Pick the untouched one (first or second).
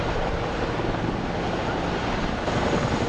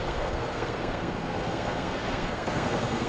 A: first